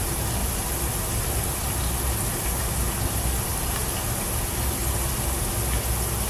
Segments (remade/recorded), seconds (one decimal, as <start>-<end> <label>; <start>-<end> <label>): 0.0-0.4 remade; 0.4-1.2 recorded; 1.2-1.6 remade; 1.6-2.3 recorded; 2.3-4.8 remade; 4.8-6.3 recorded